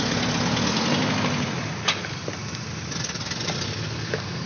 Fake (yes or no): no